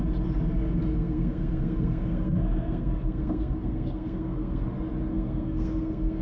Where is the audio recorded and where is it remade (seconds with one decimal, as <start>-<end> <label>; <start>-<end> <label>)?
0.0-0.9 recorded; 0.9-4.6 remade; 4.6-5.1 recorded; 5.1-6.2 remade

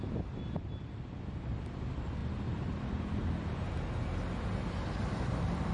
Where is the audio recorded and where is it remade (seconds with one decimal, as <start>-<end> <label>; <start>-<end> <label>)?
0.0-5.7 recorded

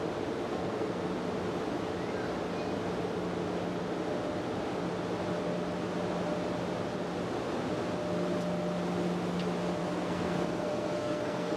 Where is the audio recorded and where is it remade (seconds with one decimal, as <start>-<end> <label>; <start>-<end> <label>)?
0.0-0.5 recorded; 0.5-1.1 remade; 1.1-9.8 recorded; 9.8-11.6 remade

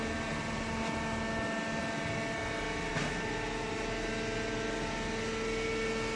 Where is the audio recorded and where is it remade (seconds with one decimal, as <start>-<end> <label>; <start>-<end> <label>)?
0.0-6.2 recorded

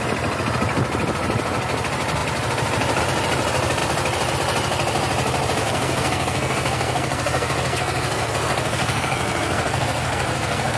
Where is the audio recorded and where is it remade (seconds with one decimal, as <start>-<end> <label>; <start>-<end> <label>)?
0.0-5.6 recorded; 5.6-10.8 remade